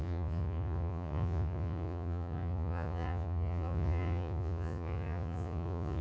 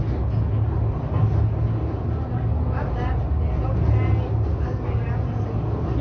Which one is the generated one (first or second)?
first